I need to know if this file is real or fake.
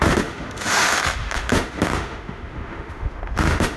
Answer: fake